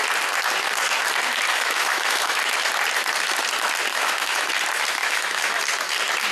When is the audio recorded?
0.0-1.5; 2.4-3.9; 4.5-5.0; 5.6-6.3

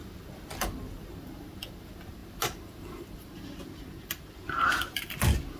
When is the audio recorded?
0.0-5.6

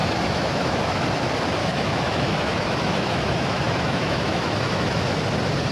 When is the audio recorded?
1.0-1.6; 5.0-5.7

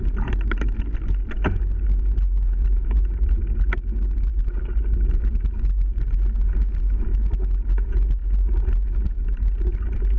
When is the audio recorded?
0.0-10.2

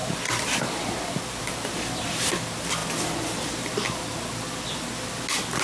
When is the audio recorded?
0.0-5.6